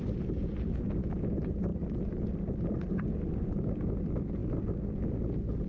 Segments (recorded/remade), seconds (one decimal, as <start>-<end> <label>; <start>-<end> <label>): 0.0-5.7 recorded